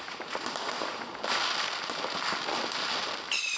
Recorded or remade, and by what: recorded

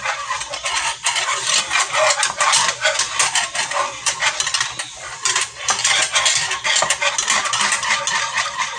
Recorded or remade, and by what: recorded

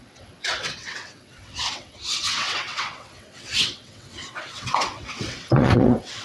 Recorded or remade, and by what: remade, vocoder, WaveNeXt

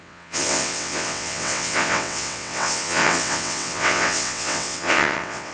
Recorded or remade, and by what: remade, vocoder, WaveNeXt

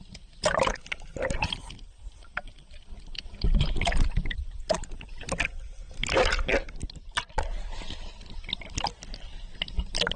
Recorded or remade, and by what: recorded